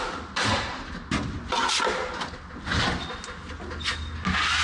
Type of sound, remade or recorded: recorded